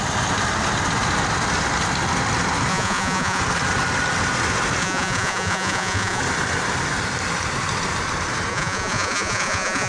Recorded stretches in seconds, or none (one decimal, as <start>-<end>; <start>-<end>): 0.0-2.7; 3.4-4.8; 6.2-8.5

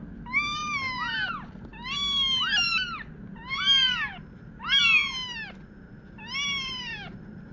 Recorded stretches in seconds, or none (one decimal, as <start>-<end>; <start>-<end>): 0.0-7.5

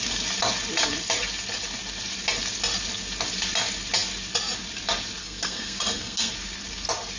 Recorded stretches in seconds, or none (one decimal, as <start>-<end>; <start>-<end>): 0.0-5.2; 6.3-7.2

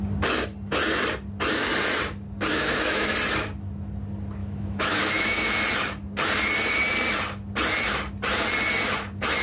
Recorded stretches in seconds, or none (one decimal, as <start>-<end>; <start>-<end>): 0.0-2.5; 3.1-4.4; 5.6-9.4